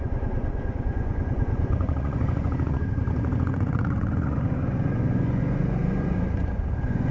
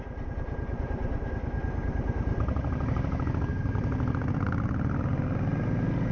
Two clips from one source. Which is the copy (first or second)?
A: first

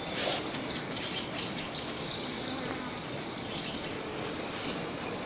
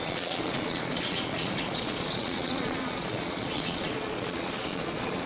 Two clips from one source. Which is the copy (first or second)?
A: second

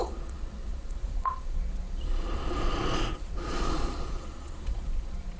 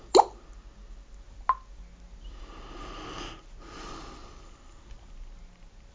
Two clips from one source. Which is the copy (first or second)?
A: first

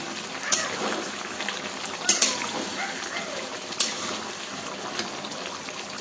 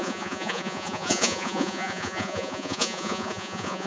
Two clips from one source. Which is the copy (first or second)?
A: second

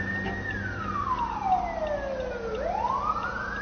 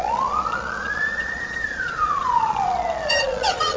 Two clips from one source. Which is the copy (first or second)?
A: second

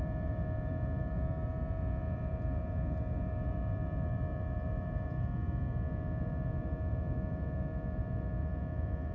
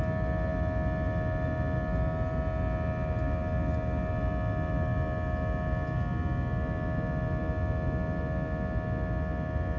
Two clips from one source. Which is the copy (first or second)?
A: first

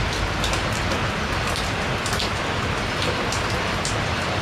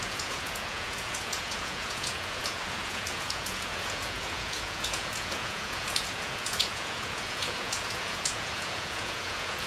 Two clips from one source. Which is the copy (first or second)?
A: second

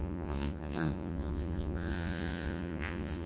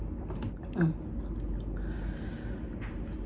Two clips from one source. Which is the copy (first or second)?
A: first